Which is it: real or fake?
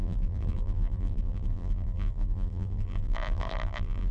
fake